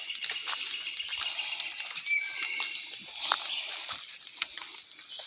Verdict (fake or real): real